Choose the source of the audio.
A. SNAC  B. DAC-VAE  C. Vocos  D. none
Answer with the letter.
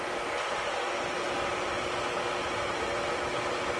D